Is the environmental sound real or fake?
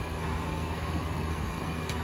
fake